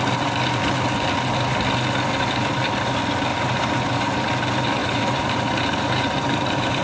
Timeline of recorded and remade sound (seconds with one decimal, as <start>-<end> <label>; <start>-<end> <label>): 0.0-3.3 recorded; 3.3-4.1 remade; 4.1-4.8 recorded; 4.8-6.8 remade